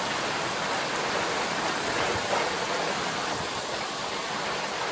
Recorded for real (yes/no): yes